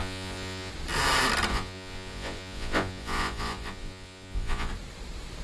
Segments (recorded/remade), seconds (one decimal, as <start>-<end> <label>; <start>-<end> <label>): 0.0-0.7 remade; 0.7-1.5 recorded; 1.5-4.7 remade; 4.7-5.4 recorded